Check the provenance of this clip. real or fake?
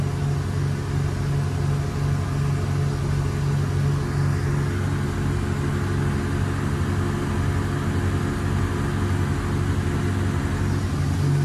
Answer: real